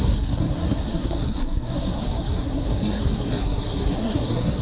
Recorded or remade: remade